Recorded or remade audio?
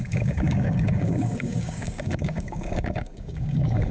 remade